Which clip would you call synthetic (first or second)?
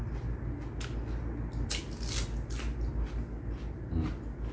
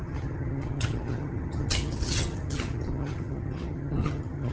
second